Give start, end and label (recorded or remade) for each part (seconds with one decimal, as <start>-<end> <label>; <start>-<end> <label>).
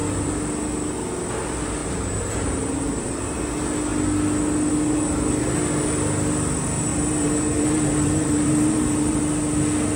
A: 0.0-1.8 recorded; 1.8-3.2 remade; 3.2-6.9 recorded; 6.9-9.2 remade; 9.2-10.0 recorded